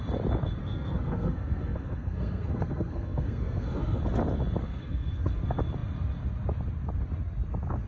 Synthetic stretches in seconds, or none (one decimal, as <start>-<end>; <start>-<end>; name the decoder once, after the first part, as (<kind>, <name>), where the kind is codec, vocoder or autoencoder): 0.6-4.0 (codec, SNAC); 4.6-5.3